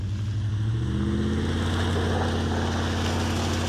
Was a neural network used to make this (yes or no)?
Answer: no